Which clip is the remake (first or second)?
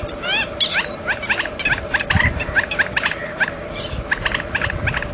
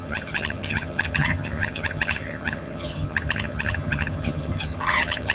second